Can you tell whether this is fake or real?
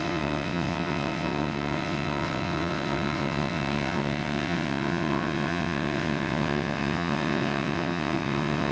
fake